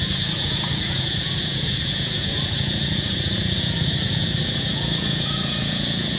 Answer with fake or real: fake